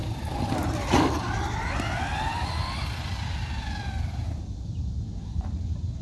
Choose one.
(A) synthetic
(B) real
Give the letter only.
B